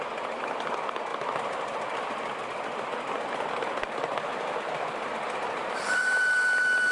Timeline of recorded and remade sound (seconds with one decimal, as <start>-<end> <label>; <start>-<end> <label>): 0.0-6.9 recorded